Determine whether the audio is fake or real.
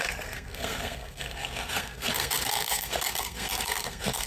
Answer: fake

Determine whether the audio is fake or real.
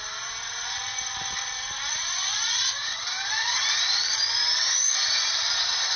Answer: real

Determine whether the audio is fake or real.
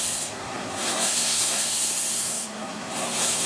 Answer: fake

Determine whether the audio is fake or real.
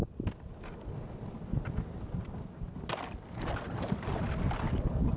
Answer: real